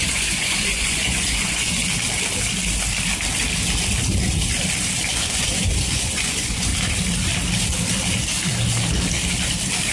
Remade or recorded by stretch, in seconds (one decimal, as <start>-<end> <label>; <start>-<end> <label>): 0.0-1.8 remade; 1.8-5.1 recorded; 5.1-6.7 remade; 6.7-9.9 recorded